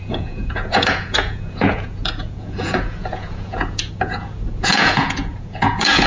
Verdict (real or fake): fake